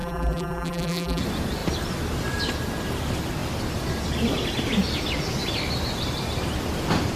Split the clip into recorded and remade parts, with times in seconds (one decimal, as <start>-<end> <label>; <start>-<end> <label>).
0.0-1.2 remade; 1.2-7.2 recorded